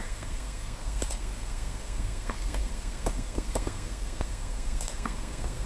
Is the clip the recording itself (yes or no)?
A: no